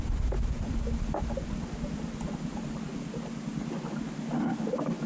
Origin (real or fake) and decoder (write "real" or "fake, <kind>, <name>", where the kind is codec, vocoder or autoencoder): real